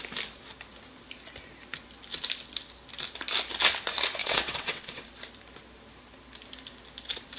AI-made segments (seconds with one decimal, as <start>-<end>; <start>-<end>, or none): 4.2-5.0